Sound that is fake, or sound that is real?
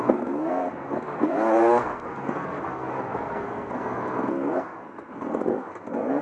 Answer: fake